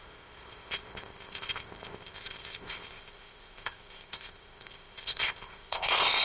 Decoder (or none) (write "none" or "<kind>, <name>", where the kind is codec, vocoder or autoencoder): codec, ZipCodec